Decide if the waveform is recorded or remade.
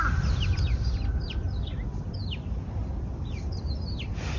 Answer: recorded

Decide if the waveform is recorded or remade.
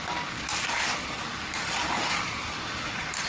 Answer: recorded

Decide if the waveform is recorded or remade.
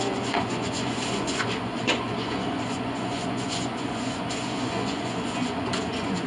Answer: remade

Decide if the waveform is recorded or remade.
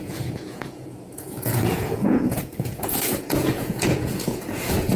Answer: remade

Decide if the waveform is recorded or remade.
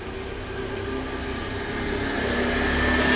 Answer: recorded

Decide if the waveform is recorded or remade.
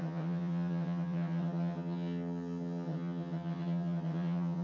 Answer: remade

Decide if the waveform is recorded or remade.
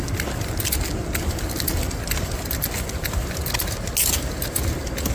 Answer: recorded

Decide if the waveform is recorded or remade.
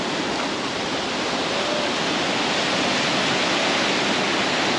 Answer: recorded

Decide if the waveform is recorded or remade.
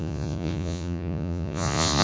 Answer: remade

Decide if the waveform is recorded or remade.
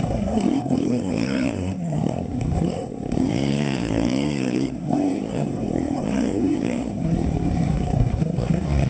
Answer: remade